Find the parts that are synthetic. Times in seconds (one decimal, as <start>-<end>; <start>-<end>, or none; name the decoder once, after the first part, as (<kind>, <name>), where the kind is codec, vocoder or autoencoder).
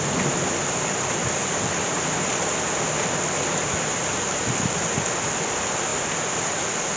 5.9-6.6 (vocoder, BigVGAN v2)